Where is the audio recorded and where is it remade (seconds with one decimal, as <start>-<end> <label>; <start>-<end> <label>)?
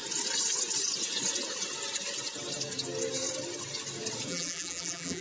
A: 0.0-4.3 recorded; 4.3-5.2 remade